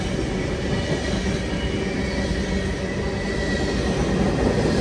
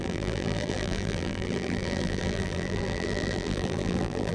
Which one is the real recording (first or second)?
first